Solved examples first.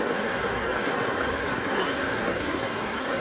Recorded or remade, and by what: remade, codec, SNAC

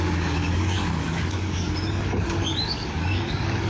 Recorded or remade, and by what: remade, codec, DAC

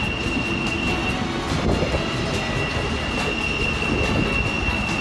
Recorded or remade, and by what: recorded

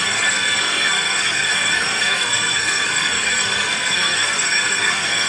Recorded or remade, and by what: remade, codec, SNAC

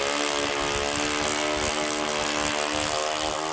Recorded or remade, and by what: recorded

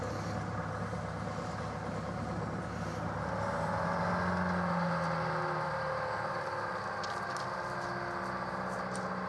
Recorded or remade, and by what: recorded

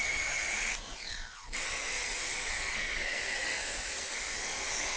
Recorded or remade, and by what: remade, codec, SNAC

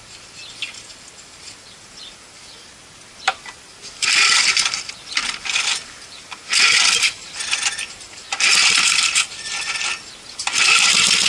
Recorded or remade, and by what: recorded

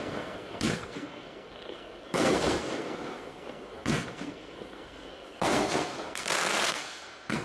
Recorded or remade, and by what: remade, codec, SNAC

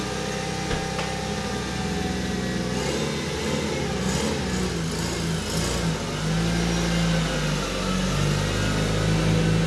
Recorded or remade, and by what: recorded